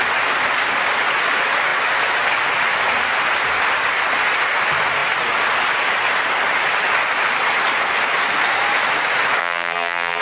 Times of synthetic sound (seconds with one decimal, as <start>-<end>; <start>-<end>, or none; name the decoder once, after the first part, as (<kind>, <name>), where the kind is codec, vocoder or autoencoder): 9.4-10.2 (vocoder, BigVGAN v2)